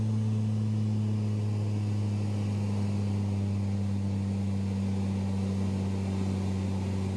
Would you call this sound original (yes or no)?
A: yes